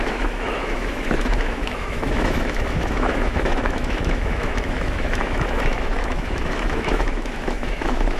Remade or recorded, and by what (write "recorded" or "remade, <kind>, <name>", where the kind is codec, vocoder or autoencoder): remade, autoencoder, DAC-VAE